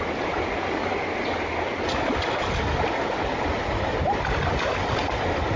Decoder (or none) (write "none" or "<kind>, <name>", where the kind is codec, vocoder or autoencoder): none